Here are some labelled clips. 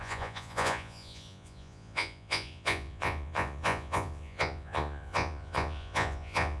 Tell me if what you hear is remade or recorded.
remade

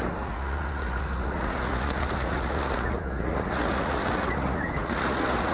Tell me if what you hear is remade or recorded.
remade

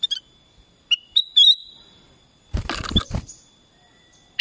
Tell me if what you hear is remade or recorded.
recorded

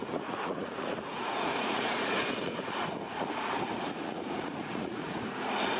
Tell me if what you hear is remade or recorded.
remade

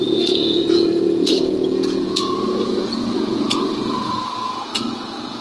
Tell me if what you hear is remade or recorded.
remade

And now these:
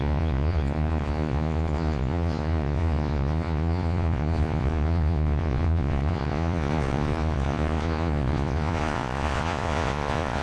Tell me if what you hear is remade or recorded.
remade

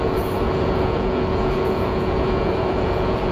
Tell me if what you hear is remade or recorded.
remade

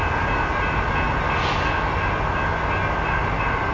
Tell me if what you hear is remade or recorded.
recorded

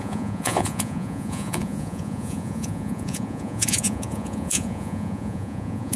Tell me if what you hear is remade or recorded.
remade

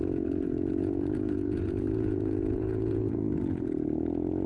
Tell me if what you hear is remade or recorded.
remade